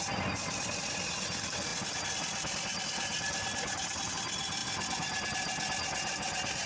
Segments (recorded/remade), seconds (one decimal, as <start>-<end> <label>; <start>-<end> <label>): 0.0-6.7 recorded